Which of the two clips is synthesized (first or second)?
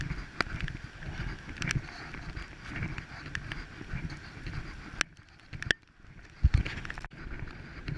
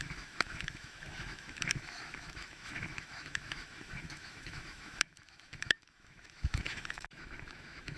second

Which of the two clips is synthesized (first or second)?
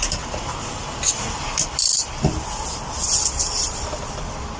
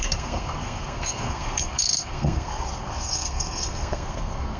second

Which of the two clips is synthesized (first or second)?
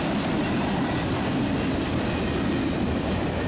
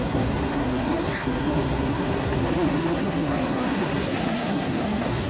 second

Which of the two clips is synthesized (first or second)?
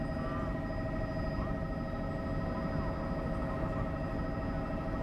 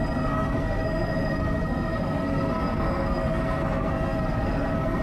second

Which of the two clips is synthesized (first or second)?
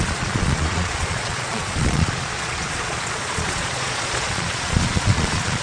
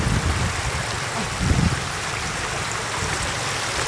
first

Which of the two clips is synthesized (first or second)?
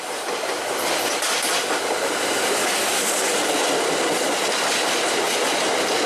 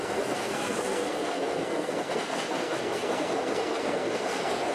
second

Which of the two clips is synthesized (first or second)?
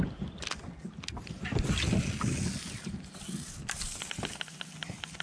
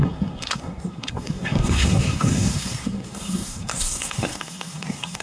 second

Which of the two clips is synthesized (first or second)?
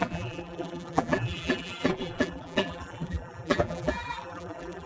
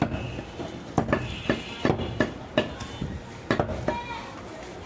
first